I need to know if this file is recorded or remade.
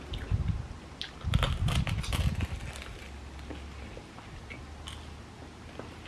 recorded